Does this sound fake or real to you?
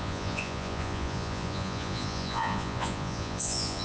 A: fake